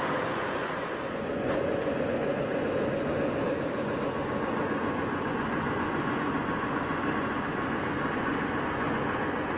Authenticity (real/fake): fake